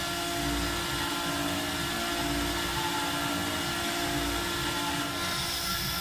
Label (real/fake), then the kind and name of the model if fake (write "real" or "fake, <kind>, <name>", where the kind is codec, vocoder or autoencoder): real